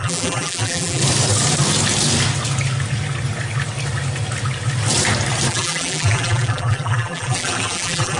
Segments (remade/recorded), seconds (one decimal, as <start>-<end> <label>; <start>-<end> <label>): 0.0-1.0 remade; 1.0-5.5 recorded; 5.5-8.2 remade